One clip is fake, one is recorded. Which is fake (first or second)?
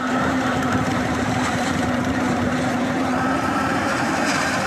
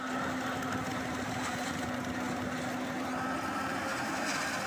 first